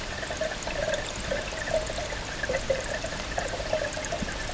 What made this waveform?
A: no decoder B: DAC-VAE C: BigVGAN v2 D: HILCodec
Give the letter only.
C